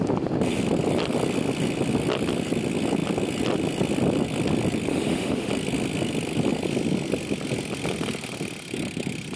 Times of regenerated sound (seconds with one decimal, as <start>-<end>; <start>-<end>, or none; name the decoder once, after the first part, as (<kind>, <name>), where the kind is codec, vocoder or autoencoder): 4.9-5.5 (autoencoder, DAC-VAE)